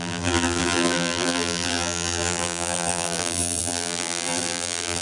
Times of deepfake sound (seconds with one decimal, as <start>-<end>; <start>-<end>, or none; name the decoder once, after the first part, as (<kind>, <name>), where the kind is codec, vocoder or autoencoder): 0.0-5.0 (vocoder, BigVGAN v2)